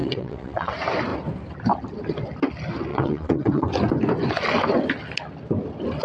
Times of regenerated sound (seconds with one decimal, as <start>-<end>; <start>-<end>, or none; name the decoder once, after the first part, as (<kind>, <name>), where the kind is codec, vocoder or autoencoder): 0.0-0.7 (vocoder, WaveNeXt); 2.9-3.7